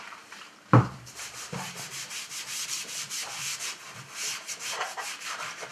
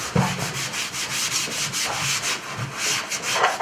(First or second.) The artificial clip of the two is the first